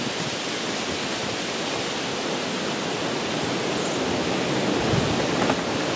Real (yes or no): yes